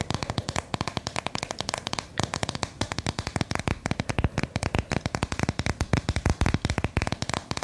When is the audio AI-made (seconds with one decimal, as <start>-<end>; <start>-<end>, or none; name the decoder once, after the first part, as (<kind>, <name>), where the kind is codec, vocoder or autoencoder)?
0.4-3.7 (vocoder, BigVGAN v2)